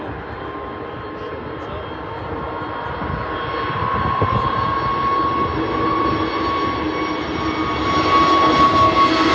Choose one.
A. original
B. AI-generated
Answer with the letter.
A